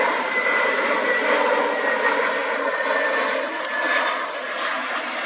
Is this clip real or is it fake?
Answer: real